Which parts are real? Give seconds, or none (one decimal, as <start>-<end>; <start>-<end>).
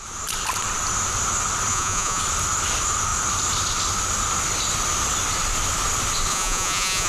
0.0-1.7; 2.2-6.3